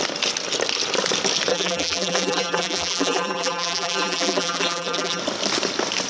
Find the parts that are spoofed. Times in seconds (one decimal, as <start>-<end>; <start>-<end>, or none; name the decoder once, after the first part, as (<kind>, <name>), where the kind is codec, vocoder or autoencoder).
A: 1.5-5.2 (vocoder, BigVGAN v2)